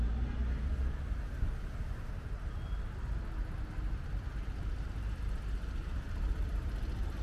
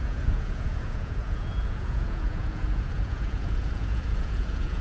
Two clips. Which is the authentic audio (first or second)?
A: first